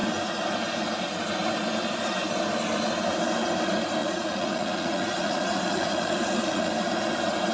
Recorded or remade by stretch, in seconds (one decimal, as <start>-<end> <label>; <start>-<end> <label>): 0.0-4.0 recorded; 4.0-6.7 remade; 6.7-7.5 recorded